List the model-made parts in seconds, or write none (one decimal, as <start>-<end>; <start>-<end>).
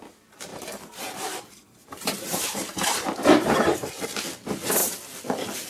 0.5-3.9